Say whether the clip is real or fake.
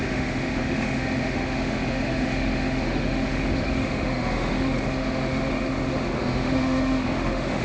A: fake